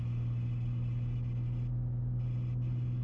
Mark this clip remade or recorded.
recorded